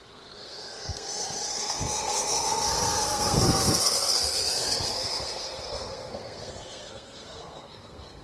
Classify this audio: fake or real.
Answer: fake